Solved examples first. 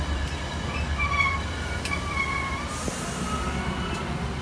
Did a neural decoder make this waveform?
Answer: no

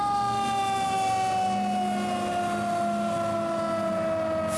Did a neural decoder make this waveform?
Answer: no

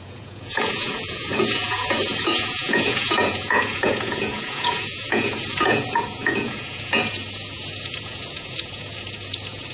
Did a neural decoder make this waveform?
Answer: yes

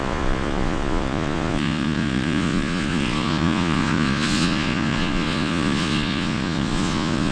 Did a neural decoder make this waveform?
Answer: yes